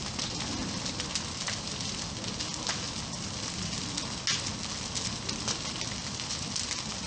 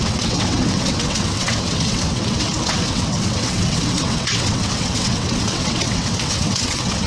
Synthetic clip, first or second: second